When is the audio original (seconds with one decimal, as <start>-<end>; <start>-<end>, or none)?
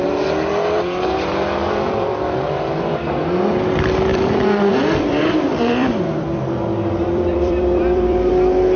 0.0-1.6; 3.1-4.1; 8.3-8.8